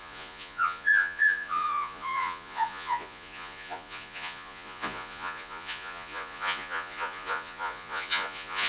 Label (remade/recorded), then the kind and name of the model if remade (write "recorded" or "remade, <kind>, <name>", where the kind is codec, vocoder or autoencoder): remade, vocoder, Vocos